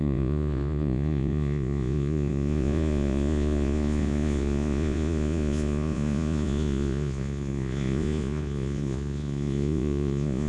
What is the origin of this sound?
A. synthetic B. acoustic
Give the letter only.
A